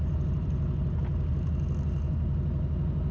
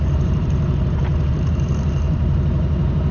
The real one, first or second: first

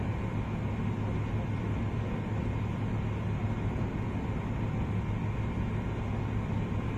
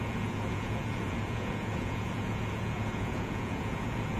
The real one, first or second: first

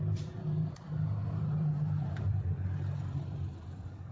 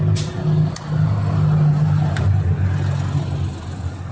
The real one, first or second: second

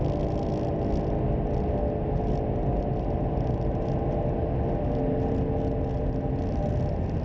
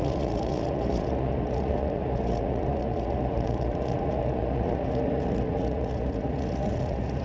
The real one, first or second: first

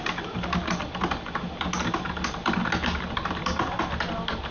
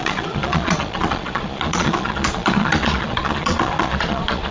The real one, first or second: first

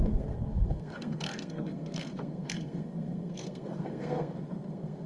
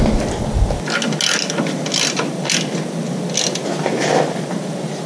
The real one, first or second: second